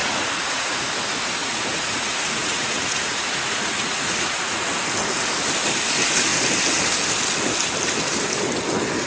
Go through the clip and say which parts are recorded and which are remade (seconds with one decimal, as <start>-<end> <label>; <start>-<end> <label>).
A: 0.0-0.9 remade; 0.9-1.4 recorded; 1.4-4.7 remade; 4.7-9.1 recorded